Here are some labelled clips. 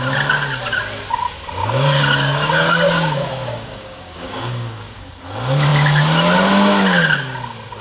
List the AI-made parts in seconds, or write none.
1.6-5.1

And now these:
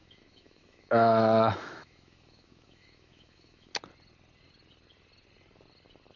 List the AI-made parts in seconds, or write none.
0.0-3.7

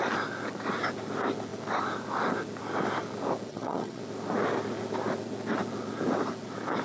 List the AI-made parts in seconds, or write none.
3.5-4.0

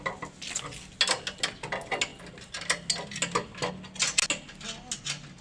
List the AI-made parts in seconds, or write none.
none

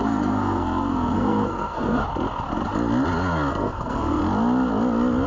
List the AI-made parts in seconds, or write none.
0.0-2.0; 3.5-4.2

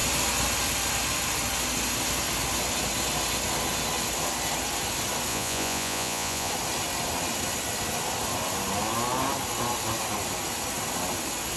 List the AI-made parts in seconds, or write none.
5.3-6.5

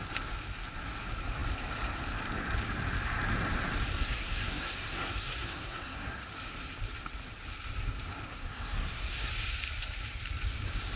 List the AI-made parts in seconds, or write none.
3.9-6.3; 8.3-9.3